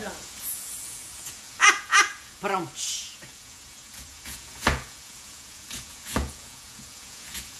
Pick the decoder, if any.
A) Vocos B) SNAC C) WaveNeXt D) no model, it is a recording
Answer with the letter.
A